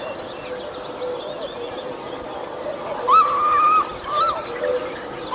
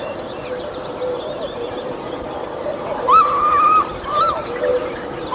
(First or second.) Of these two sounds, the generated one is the second